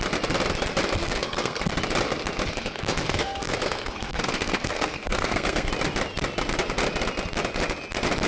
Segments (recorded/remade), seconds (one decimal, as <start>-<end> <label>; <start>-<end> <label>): 0.0-1.0 recorded; 1.0-1.7 remade; 1.7-2.5 recorded; 2.5-5.7 remade; 5.7-8.3 recorded